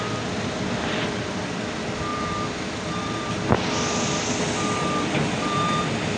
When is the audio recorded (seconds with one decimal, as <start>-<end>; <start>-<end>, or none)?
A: none